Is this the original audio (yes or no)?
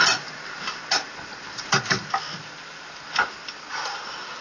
yes